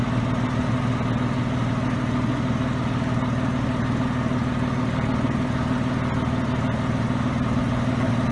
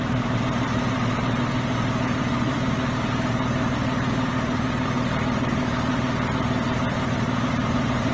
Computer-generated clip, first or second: second